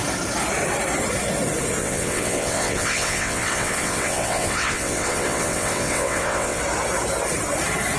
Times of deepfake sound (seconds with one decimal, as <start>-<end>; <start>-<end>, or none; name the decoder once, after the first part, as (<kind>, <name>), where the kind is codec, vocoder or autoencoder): 1.8-6.6 (vocoder, WaveNeXt)

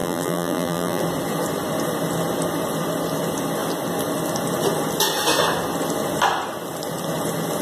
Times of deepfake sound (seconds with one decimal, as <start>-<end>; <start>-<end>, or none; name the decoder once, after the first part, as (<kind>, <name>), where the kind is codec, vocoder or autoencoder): 0.0-1.0 (vocoder, BigVGAN v2)

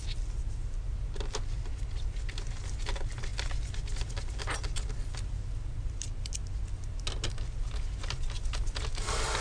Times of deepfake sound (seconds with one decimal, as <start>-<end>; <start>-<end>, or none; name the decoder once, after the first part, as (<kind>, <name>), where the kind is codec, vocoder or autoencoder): none

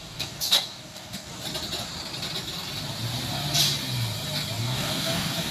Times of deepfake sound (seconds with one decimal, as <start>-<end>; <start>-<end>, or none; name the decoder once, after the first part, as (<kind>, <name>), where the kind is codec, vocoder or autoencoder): 0.0-1.3 (codec, DAC); 4.6-5.5

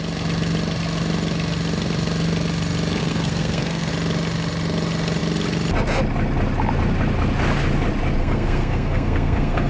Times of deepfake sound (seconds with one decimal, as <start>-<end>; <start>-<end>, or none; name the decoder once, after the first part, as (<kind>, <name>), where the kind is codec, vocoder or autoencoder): 3.0-3.9 (codec, SNAC); 8.2-9.7

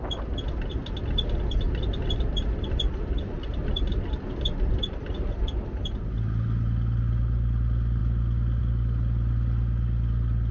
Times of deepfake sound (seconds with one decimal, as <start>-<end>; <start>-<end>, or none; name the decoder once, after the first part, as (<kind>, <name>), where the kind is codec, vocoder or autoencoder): none